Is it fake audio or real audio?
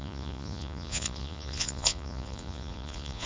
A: fake